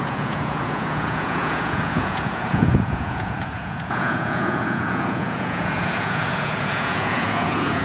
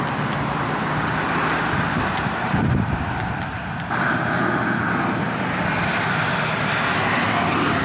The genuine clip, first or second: second